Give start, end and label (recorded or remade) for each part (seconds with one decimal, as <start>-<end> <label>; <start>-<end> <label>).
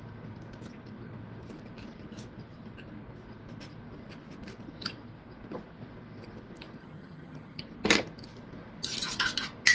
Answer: 0.0-6.8 recorded; 6.8-7.6 remade; 7.6-9.7 recorded